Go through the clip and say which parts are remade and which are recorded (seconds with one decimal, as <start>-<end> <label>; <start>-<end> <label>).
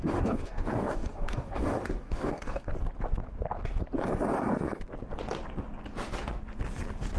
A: 0.0-2.7 remade; 2.7-7.2 recorded